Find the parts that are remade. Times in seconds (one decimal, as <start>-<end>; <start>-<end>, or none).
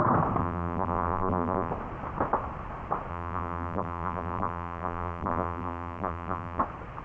0.4-1.7; 3.1-6.6